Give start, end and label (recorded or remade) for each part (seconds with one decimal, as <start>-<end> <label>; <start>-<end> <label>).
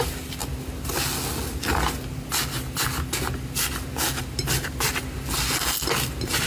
0.0-6.5 recorded